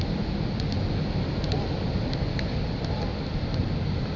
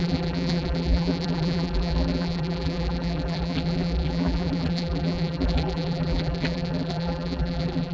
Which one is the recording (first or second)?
first